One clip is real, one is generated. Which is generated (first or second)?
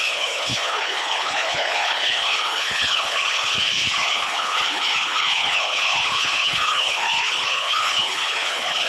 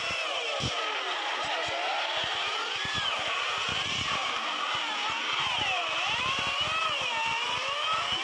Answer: first